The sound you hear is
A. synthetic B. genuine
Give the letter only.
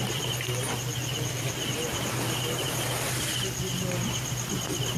B